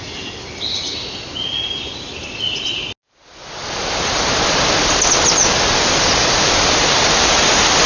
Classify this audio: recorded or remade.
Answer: recorded